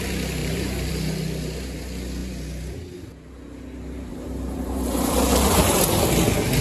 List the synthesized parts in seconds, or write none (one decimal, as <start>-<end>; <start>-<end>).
0.4-0.9; 4.1-5.8